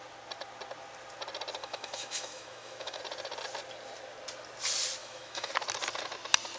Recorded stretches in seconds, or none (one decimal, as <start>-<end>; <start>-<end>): 0.0-1.6; 3.0-5.0; 5.5-6.6